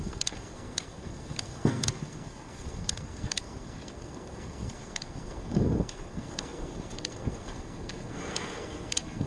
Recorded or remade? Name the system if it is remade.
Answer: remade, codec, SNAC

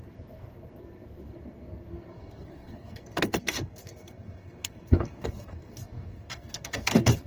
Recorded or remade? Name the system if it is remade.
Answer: remade, codec, SNAC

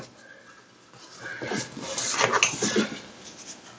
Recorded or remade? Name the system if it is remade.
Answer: recorded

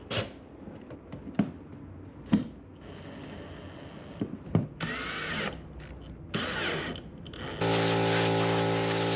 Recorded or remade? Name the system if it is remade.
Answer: recorded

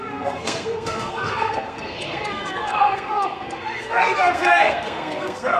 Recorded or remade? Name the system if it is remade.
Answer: remade, codec, SNAC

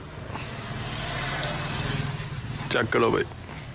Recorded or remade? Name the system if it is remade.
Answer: recorded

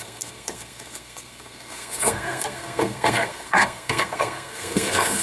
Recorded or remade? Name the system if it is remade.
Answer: remade, codec, SNAC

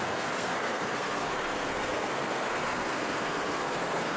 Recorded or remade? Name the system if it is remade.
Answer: remade, codec, SNAC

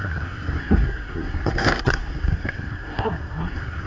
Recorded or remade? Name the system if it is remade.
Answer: remade, codec, SNAC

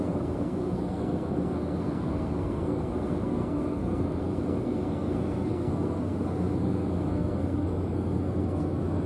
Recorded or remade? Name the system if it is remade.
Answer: remade, codec, SNAC